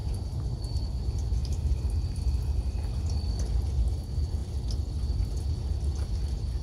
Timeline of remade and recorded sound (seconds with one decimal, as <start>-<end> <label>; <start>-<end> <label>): 0.0-0.8 remade; 0.8-6.6 recorded